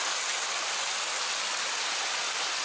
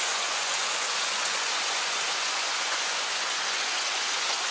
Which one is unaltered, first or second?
first